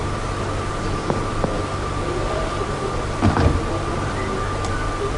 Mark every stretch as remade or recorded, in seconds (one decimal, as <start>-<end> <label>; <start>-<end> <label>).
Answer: 0.0-0.7 remade; 0.7-1.5 recorded; 1.5-4.1 remade; 4.1-5.2 recorded